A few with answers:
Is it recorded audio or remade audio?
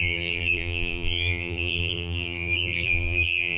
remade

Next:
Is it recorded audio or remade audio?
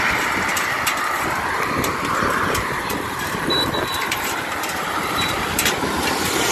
remade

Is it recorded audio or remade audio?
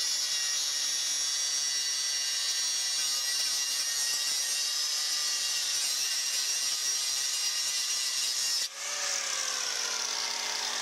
recorded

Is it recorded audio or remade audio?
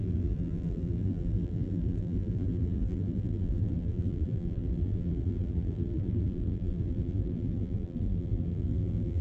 remade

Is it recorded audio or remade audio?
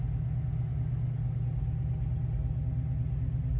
recorded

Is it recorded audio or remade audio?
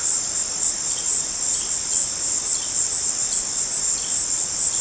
remade